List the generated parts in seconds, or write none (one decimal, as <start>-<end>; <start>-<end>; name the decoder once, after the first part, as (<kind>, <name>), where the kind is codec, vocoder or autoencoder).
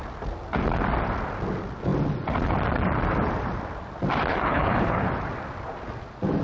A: 4.3-5.1 (codec, HILCodec)